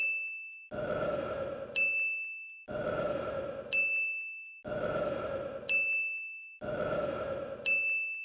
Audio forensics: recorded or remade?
recorded